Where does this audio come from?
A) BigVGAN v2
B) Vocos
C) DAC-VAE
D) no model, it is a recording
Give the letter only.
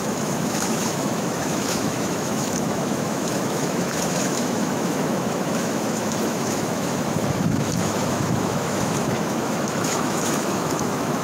C